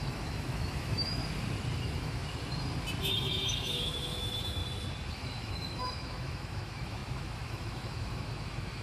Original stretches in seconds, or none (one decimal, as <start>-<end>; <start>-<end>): 1.2-1.8; 2.2-3.0; 4.6-5.1